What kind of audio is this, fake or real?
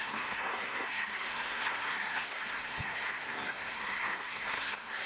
fake